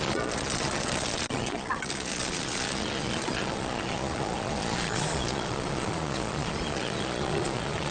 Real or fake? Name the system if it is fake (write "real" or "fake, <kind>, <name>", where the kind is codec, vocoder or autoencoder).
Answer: fake, vocoder, Vocos